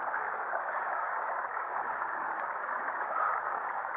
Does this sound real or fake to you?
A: fake